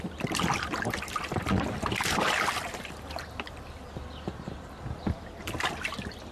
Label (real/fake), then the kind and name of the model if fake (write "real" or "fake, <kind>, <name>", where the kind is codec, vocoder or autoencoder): fake, vocoder, BigVGAN v2